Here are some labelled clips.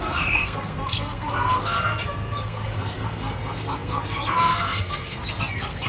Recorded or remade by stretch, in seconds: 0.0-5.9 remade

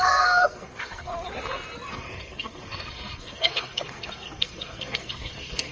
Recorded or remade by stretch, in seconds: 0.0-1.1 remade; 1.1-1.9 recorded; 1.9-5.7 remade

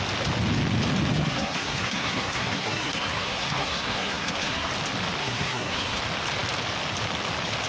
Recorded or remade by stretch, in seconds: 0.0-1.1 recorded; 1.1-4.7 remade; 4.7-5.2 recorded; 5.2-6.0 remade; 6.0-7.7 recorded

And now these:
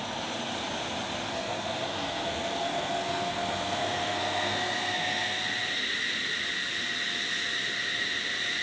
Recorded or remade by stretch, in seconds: 0.0-1.3 recorded; 1.3-5.4 remade; 5.4-8.6 recorded